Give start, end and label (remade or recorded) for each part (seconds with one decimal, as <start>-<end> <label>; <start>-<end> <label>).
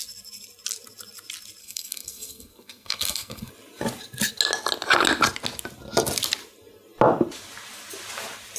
0.0-1.6 recorded; 1.6-3.5 remade; 3.5-8.6 recorded